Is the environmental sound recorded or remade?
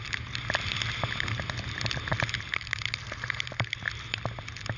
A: recorded